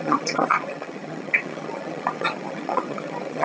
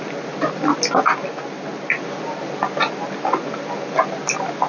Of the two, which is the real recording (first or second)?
second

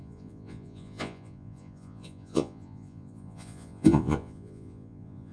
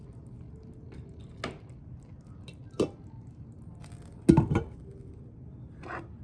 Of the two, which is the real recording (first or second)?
second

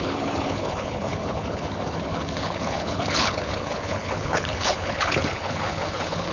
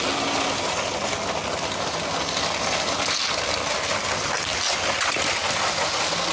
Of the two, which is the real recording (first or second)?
second